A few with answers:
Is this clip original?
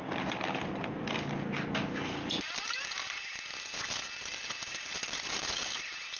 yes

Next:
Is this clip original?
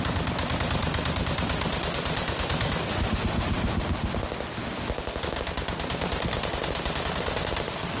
yes